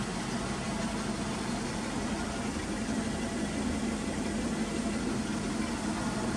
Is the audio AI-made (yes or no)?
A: no